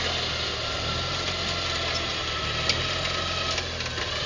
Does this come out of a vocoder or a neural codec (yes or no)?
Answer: no